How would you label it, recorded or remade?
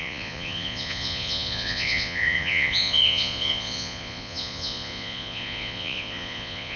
remade